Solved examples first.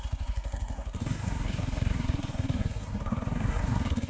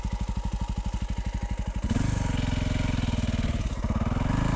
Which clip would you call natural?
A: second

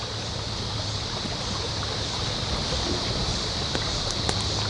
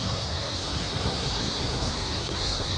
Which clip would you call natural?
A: first